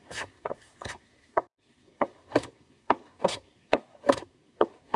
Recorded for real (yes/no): no